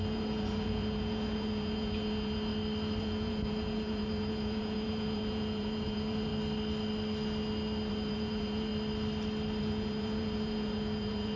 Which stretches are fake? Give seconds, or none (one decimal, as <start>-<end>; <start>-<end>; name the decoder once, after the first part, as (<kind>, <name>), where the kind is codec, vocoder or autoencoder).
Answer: 0.0-2.5 (vocoder, Vocos); 3.0-6.3; 7.9-8.7; 9.6-11.4